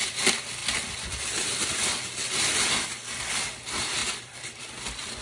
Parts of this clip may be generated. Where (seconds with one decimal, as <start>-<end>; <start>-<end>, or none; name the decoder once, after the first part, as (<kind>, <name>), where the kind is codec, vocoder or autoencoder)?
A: 0.0-0.6 (vocoder, BigVGAN v2); 2.8-5.2